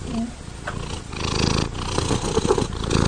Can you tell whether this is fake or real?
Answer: real